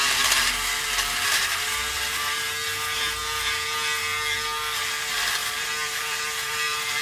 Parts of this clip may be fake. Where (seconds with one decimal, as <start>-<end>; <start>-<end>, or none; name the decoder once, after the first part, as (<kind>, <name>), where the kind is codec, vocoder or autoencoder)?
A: 5.4-7.0 (vocoder, BigVGAN v2)